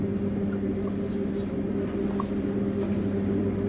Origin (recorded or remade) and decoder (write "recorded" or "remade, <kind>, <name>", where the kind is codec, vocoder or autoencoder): recorded